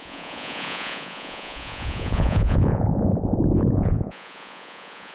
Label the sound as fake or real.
fake